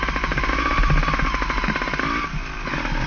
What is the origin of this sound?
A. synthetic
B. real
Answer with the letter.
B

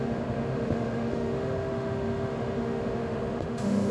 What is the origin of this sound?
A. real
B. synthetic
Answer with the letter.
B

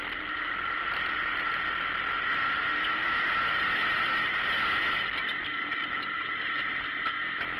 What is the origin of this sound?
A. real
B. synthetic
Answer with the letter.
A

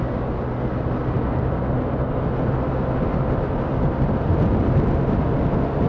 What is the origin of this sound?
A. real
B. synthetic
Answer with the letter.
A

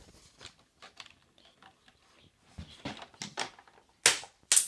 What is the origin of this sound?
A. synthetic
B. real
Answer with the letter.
B